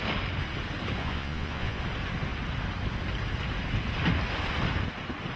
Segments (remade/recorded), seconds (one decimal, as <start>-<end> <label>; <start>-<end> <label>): 0.0-1.0 recorded; 1.0-1.8 remade; 1.8-5.4 recorded